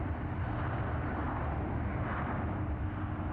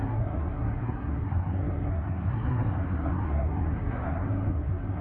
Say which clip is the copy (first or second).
second